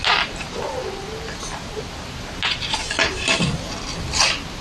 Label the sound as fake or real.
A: real